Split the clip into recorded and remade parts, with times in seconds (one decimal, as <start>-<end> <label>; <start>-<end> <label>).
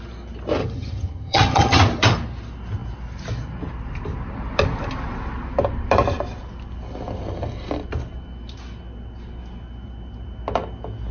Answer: 0.0-0.6 recorded; 0.6-1.8 remade; 1.8-11.1 recorded